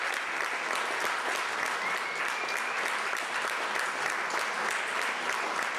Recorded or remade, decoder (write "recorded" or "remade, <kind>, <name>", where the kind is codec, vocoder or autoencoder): recorded